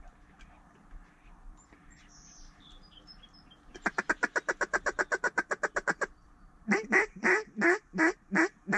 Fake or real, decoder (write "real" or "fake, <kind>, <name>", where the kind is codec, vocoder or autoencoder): fake, vocoder, BigVGAN v2